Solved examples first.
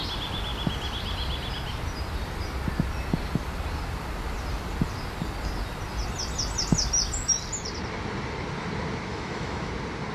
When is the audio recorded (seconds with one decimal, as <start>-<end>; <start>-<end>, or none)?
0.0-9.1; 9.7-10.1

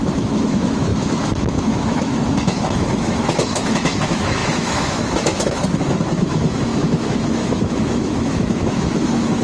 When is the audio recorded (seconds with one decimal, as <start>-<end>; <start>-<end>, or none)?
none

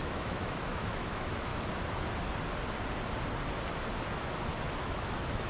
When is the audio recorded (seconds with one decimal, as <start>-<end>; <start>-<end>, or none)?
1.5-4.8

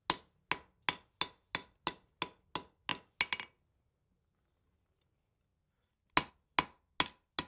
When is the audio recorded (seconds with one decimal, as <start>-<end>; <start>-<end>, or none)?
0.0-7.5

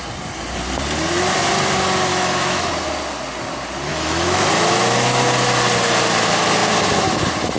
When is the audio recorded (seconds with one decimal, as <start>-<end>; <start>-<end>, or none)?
0.0-2.1; 2.6-3.9; 4.5-7.6